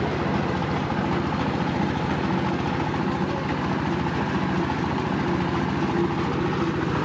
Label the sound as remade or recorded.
recorded